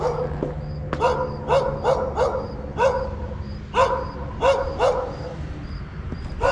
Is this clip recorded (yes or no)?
yes